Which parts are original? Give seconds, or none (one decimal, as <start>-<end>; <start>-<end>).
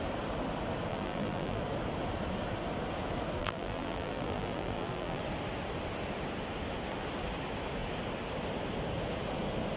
0.0-0.9; 1.6-3.4; 5.2-9.8